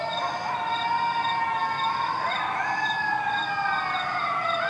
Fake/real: real